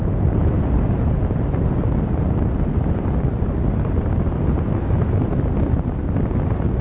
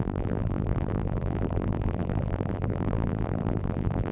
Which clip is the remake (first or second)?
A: second